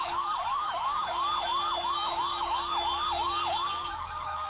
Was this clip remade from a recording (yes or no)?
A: yes